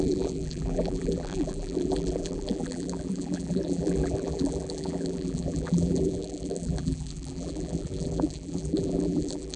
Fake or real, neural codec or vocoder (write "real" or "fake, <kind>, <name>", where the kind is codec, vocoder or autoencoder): fake, vocoder, BigVGAN v2